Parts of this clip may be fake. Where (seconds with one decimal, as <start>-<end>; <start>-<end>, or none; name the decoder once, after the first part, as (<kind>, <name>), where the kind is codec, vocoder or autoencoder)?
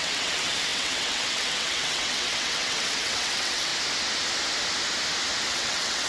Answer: 0.0-3.7 (vocoder, WaveNeXt); 5.5-6.1